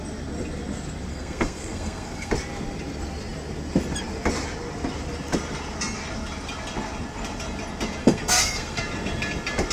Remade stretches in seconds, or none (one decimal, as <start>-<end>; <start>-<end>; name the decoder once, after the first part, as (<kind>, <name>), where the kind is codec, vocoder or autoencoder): 1.1-2.3 (codec, SNAC); 8.0-8.8

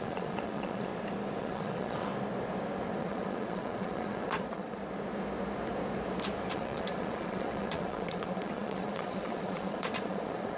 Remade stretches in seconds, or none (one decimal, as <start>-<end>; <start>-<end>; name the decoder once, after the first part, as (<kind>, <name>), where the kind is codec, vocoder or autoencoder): 0.0-0.9 (vocoder, Vocos); 1.4-2.1; 3.0-4.8; 6.5-10.6

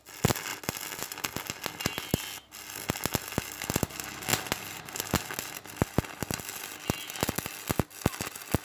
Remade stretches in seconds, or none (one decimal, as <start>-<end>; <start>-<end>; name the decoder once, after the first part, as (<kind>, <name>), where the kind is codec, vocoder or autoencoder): none

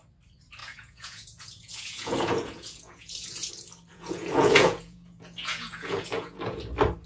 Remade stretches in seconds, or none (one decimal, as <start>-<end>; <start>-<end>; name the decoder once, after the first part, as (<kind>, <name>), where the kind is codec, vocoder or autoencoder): 0.6-3.5 (vocoder, Vocos); 3.9-6.6

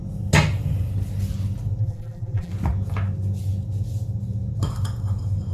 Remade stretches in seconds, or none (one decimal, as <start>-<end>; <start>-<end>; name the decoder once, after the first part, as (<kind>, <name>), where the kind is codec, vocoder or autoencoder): 1.8-2.5 (vocoder, BigVGAN v2)

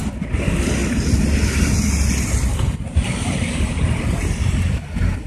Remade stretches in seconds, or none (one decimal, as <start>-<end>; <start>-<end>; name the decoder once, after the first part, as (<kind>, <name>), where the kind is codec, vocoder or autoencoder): none